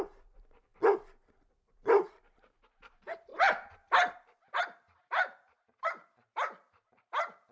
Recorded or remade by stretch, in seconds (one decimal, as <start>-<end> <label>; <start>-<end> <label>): 0.0-0.7 remade; 0.7-1.4 recorded; 1.4-7.5 remade